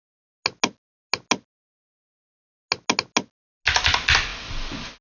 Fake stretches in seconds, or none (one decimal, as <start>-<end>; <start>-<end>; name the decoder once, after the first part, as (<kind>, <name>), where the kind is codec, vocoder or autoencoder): none